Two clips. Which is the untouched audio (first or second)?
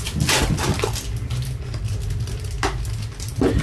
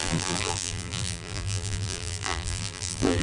first